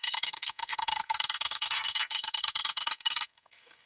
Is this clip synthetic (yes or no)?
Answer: yes